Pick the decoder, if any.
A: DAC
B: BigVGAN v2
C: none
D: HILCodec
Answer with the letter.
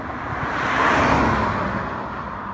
C